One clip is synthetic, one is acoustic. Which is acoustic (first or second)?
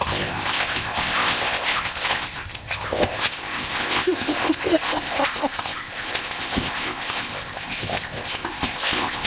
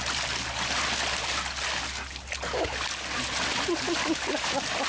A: second